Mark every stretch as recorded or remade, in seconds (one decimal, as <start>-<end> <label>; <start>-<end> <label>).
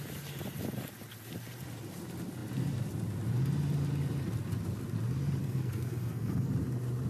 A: 0.0-5.4 recorded; 5.4-6.5 remade; 6.5-7.1 recorded